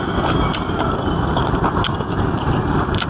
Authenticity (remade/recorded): recorded